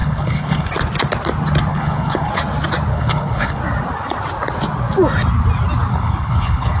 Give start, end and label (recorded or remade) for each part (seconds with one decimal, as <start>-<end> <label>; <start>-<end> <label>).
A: 0.0-0.7 remade; 0.7-1.7 recorded; 1.7-2.3 remade; 2.3-2.9 recorded; 2.9-3.6 remade; 3.6-5.9 recorded; 5.9-6.8 remade